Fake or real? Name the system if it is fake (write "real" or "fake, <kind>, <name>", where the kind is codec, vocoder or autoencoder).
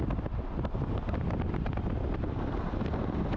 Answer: real